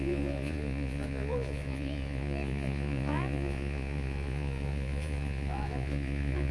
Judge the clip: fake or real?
fake